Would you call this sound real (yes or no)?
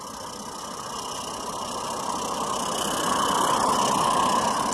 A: yes